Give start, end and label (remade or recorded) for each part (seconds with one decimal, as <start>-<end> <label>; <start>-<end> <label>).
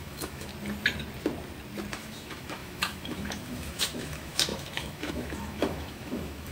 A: 0.0-0.5 remade; 0.5-1.9 recorded; 1.9-6.5 remade